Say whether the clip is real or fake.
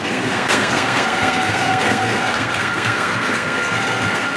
fake